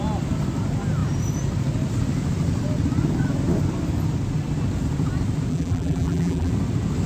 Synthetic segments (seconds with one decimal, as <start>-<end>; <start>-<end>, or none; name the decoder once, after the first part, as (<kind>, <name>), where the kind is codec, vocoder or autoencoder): 5.5-6.5 (vocoder, BigVGAN v2)